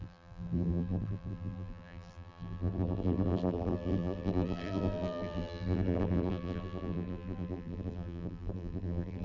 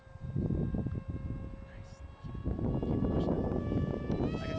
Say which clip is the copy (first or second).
first